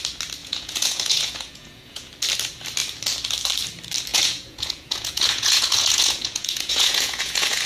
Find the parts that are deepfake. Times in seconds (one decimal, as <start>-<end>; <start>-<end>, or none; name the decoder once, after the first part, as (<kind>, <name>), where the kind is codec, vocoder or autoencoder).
0.4-2.1 (vocoder, Vocos); 4.1-7.7